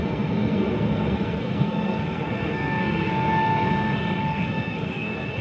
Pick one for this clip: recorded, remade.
remade